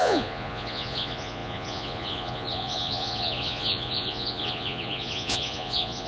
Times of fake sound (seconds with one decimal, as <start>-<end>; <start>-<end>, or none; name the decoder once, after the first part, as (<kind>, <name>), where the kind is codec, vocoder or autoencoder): 0.0-6.1 (vocoder, Vocos)